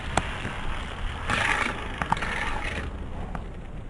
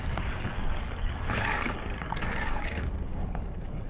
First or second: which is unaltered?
first